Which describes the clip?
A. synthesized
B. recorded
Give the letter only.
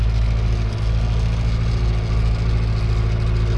B